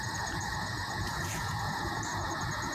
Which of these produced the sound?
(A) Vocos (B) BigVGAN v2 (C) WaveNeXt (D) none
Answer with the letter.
A